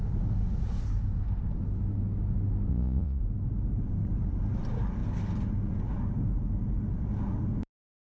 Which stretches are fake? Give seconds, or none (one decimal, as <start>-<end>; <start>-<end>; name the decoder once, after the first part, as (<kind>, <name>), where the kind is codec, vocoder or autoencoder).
2.7-3.2 (vocoder, Vocos)